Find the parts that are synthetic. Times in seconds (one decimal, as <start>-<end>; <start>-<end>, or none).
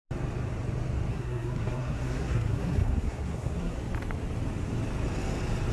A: 1.1-3.8